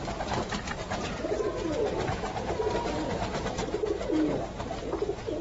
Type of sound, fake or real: fake